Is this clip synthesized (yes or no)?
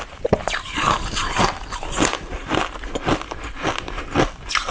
no